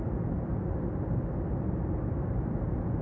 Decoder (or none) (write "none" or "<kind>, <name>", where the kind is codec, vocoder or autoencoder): none